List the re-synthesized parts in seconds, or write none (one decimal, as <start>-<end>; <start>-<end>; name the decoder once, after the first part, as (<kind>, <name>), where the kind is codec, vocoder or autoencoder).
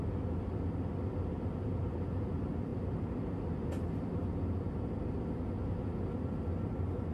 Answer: none